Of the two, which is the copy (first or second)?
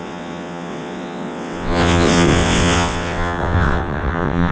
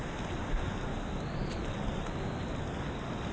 first